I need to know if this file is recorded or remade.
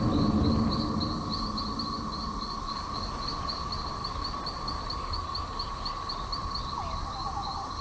recorded